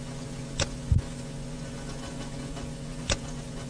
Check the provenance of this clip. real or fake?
fake